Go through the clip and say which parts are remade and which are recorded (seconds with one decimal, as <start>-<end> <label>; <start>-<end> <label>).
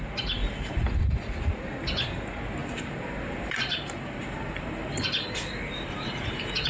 0.0-2.6 recorded; 2.6-6.7 remade